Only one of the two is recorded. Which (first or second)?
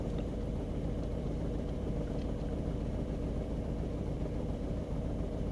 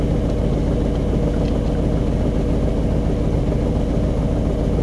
second